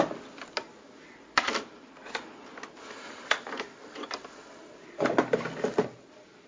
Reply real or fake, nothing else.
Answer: real